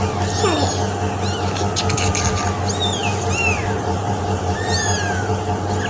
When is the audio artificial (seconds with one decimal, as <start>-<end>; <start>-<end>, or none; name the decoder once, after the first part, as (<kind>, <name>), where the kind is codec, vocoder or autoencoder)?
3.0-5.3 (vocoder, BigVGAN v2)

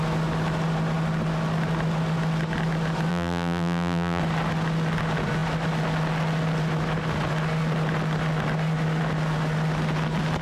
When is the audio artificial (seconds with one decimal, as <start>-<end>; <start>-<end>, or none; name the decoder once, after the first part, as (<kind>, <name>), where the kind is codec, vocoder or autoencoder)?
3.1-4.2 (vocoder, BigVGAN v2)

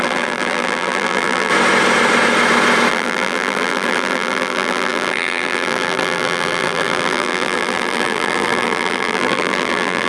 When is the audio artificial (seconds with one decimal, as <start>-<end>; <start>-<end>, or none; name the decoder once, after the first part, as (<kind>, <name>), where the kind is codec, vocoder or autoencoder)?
0.0-1.5 (vocoder, BigVGAN v2); 2.9-10.1

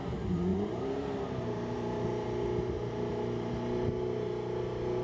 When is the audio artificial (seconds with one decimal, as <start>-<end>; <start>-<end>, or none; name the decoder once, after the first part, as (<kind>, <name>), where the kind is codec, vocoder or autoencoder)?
0.5-3.5 (vocoder, BigVGAN v2)

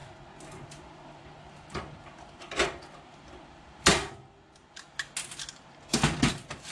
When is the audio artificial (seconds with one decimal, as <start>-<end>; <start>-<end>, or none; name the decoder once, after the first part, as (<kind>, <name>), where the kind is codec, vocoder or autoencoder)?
0.8-3.9 (vocoder, BigVGAN v2); 6.3-6.7

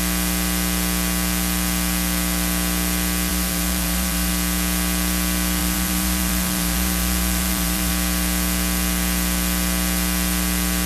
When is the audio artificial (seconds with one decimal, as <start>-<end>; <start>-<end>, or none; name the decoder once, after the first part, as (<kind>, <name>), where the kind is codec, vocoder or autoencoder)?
3.3-4.3 (vocoder, BigVGAN v2); 5.6-7.9

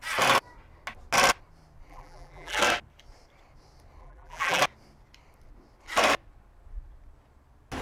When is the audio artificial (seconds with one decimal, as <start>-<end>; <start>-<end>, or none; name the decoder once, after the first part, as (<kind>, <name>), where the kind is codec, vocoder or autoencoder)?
1.9-2.6 (vocoder, BigVGAN v2); 4.0-4.6